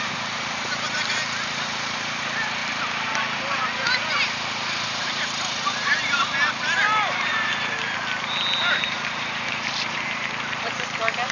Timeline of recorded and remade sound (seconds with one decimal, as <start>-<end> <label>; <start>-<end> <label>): 0.0-2.6 remade; 2.6-5.5 recorded; 5.5-7.3 remade; 7.3-8.7 recorded; 8.7-11.3 remade